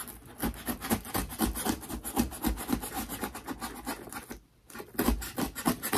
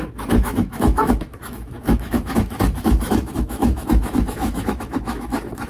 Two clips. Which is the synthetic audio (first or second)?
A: second